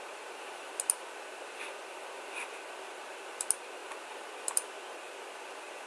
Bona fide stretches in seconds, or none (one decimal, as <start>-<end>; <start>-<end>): 0.0-5.9